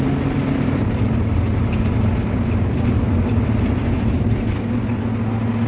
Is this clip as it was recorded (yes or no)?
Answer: yes